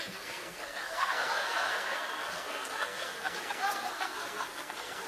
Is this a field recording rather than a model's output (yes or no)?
no